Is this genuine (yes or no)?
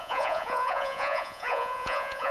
no